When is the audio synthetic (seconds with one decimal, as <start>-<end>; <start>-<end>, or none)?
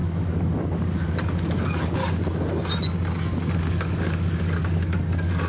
0.0-2.0; 3.6-5.5